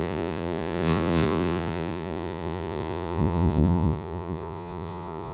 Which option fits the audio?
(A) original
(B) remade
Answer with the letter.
B